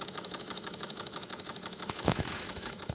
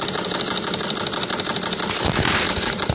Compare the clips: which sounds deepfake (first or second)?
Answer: first